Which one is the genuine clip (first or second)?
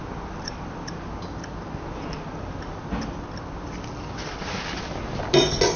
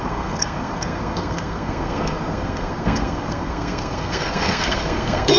first